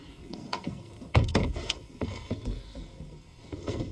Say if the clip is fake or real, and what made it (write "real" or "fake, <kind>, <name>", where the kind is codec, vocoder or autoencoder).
fake, codec, SNAC